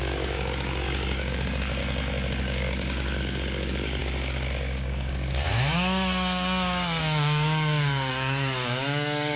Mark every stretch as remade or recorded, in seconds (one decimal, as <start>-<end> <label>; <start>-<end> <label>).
0.0-1.8 remade; 1.8-2.4 recorded; 2.4-9.4 remade

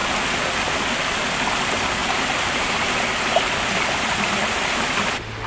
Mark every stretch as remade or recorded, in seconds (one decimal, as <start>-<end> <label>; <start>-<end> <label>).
0.0-5.5 recorded

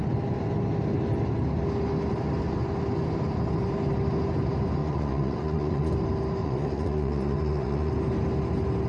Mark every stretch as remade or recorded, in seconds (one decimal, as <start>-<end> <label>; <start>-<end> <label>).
0.0-4.8 recorded; 4.8-5.9 remade; 5.9-6.4 recorded; 6.4-7.9 remade; 7.9-8.9 recorded

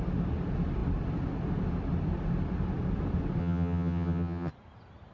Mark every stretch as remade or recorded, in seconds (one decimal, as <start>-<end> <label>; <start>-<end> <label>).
0.0-3.4 recorded; 3.4-4.5 remade; 4.5-5.1 recorded

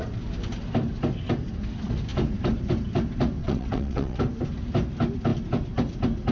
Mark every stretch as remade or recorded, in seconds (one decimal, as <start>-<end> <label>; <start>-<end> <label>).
0.0-3.4 recorded; 3.4-4.2 remade; 4.2-6.3 recorded

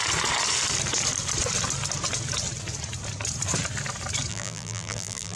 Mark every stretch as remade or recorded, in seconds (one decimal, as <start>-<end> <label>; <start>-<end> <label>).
0.0-4.3 recorded; 4.3-5.4 remade

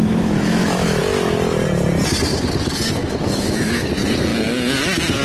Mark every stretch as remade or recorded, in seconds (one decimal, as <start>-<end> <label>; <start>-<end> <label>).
0.0-1.0 remade; 1.0-3.0 recorded; 3.0-3.9 remade; 3.9-5.2 recorded

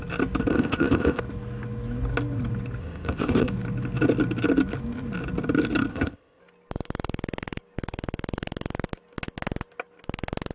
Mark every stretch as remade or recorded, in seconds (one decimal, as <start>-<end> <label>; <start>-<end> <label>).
0.0-0.5 recorded; 0.5-1.2 remade; 1.2-2.8 recorded; 2.8-3.5 remade; 3.5-5.9 recorded; 5.9-6.4 remade; 6.4-10.5 recorded